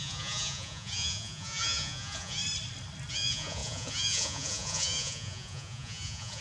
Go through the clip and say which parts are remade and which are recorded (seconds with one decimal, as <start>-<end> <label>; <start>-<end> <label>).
0.0-2.4 remade; 2.4-3.1 recorded; 3.1-6.4 remade